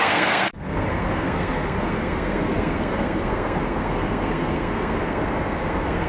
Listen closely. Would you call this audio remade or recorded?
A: remade